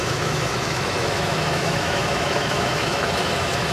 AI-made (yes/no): yes